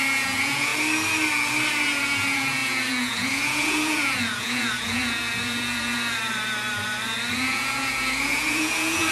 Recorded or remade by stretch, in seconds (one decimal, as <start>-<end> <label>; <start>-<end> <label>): 0.0-0.7 remade; 0.7-1.7 recorded; 1.7-6.2 remade; 6.2-7.3 recorded; 7.3-9.1 remade